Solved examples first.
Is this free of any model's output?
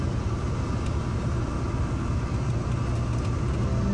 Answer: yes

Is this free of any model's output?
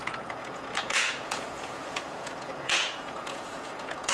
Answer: no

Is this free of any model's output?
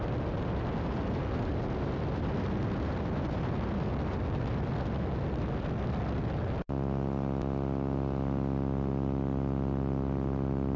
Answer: yes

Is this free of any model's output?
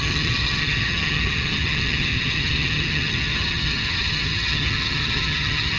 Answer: no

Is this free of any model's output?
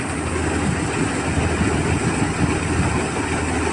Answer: yes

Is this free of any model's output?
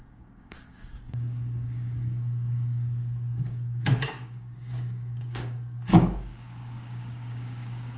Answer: no